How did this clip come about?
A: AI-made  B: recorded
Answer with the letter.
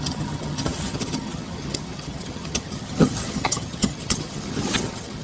A